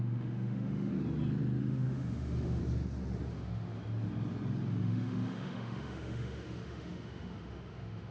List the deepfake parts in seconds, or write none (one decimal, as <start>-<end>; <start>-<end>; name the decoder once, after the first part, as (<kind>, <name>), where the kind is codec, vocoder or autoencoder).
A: 0.0-0.9 (autoencoder, DAC-VAE); 1.6-2.6; 3.3-3.8; 4.8-8.1